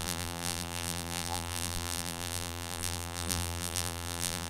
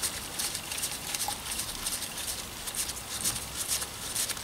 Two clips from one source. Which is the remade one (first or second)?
first